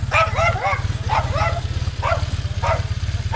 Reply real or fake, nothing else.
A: real